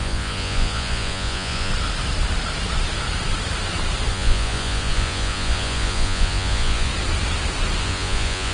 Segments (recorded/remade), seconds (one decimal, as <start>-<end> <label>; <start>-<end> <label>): 0.0-1.7 remade; 1.7-4.1 recorded; 4.1-6.9 remade; 6.9-7.8 recorded; 7.8-8.5 remade